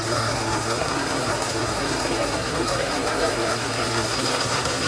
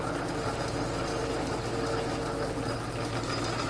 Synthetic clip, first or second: first